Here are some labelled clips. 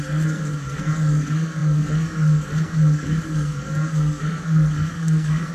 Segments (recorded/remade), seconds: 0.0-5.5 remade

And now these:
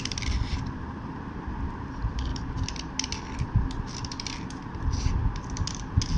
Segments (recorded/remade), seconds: 0.0-6.2 recorded